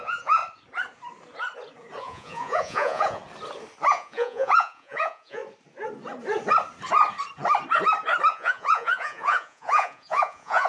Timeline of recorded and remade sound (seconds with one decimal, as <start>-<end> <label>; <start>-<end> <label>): 0.0-0.4 remade; 0.4-2.0 recorded; 2.0-3.2 remade; 3.2-3.9 recorded; 3.9-5.4 remade; 5.4-8.3 recorded; 8.3-10.7 remade